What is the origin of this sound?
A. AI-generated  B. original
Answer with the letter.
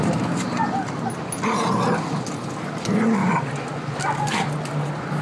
B